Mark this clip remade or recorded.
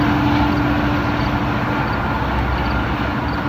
recorded